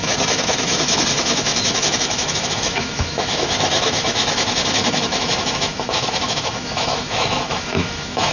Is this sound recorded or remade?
remade